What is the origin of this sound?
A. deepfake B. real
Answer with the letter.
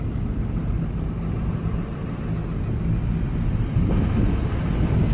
B